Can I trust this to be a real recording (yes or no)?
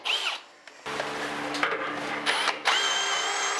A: yes